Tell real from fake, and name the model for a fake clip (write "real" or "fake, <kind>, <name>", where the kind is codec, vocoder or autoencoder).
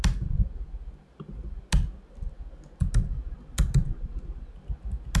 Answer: real